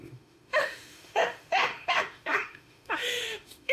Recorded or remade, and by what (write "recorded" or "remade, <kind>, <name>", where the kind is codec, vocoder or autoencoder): remade, autoencoder, DAC-VAE